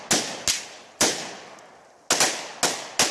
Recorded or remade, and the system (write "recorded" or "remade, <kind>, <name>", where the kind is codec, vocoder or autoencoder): recorded